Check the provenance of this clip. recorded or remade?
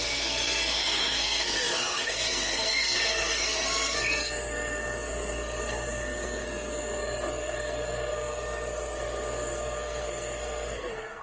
remade